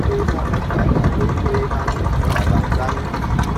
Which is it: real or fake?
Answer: real